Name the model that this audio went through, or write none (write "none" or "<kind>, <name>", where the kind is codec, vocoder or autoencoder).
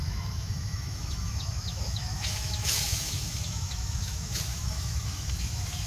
autoencoder, DAC-VAE